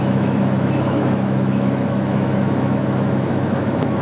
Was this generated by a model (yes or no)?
yes